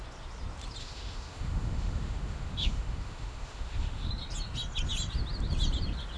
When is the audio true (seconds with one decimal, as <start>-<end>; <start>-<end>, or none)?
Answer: 0.0-0.8; 4.1-6.2

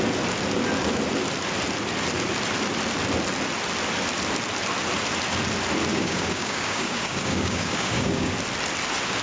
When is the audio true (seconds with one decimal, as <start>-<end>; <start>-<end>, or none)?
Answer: 0.0-5.9; 8.3-9.2

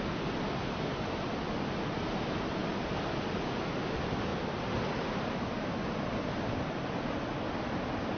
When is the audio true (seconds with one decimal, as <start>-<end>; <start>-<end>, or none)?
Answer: 0.0-8.2

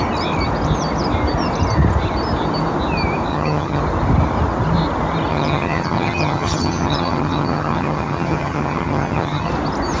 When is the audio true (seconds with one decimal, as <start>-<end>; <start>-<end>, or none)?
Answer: 0.0-3.3; 3.8-5.3; 9.5-10.0

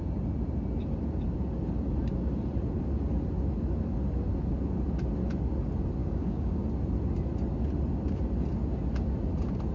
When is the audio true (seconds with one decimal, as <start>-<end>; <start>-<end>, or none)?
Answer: 0.0-6.0; 6.6-9.7

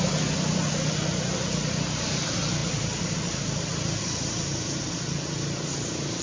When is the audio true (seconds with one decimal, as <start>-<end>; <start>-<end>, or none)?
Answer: 0.0-6.2

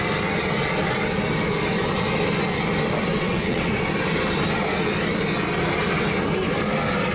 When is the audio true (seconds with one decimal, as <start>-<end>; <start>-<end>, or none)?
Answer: 0.0-3.1; 3.7-7.1

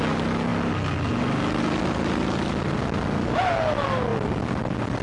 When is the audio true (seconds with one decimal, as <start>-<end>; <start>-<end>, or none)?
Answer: 0.0-5.0